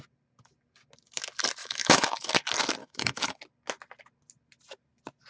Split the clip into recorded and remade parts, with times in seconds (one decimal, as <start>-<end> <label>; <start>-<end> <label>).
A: 0.0-1.6 recorded; 1.6-2.3 remade; 2.3-2.8 recorded; 2.8-3.4 remade; 3.4-5.3 recorded